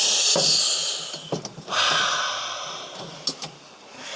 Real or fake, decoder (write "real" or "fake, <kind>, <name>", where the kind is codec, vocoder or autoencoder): real